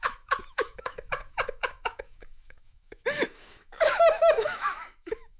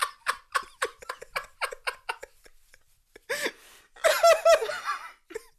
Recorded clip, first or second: second